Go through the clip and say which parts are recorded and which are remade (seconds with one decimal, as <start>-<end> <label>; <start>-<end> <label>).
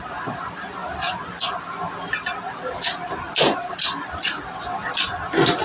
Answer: 0.0-5.6 recorded